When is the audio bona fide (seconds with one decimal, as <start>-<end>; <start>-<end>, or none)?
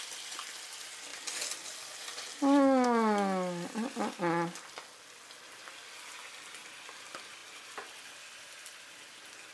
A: 0.0-9.5